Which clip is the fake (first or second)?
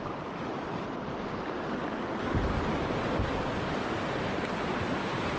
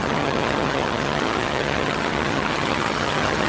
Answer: second